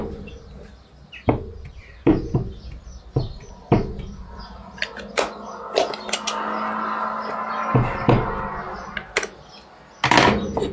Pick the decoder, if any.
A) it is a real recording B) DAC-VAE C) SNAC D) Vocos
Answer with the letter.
A